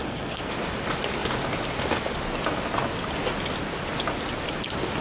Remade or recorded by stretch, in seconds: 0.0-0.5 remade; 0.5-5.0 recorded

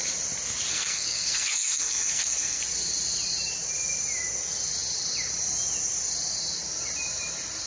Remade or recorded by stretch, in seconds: 0.0-0.7 recorded; 0.7-2.6 remade; 2.6-7.7 recorded